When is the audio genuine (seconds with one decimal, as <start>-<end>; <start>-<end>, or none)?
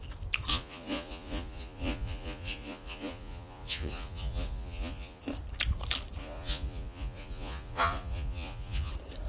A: 0.0-0.5; 5.2-6.2; 8.9-9.3